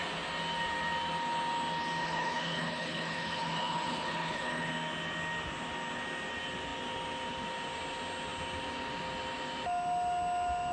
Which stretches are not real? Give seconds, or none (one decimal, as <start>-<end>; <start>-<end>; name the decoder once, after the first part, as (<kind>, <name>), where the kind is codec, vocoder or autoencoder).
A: 2.0-4.7 (codec, HILCodec)